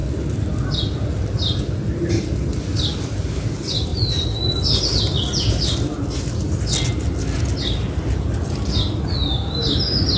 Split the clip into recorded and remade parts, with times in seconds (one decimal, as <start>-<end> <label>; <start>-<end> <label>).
0.0-10.2 recorded

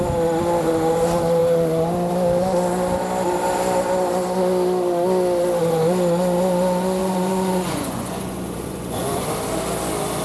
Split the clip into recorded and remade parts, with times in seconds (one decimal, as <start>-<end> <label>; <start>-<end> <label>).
0.0-7.0 recorded; 7.0-9.2 remade; 9.2-10.2 recorded

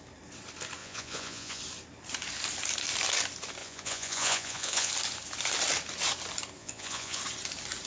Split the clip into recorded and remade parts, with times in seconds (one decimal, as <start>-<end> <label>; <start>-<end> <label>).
0.0-0.8 recorded; 0.8-1.6 remade; 1.6-3.6 recorded; 3.6-4.9 remade; 4.9-6.6 recorded; 6.6-7.2 remade; 7.2-7.9 recorded

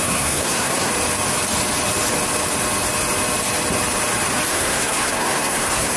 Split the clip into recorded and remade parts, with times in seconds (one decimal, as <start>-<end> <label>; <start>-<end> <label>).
0.0-0.9 remade; 0.9-4.5 recorded; 4.5-6.0 remade

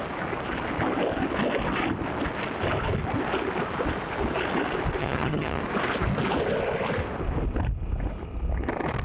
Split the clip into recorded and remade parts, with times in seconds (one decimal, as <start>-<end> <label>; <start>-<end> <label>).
0.0-5.0 recorded; 5.0-5.6 remade; 5.6-9.0 recorded

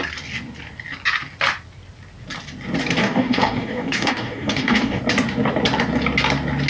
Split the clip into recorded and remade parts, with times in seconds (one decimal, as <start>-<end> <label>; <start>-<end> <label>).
0.0-3.0 recorded; 3.0-5.0 remade; 5.0-6.7 recorded